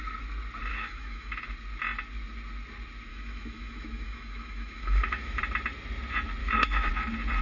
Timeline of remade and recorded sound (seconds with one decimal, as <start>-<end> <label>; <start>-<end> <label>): 0.0-0.7 recorded; 0.7-1.5 remade; 1.5-3.1 recorded; 3.1-5.4 remade; 5.4-6.4 recorded; 6.4-6.9 remade; 6.9-7.4 recorded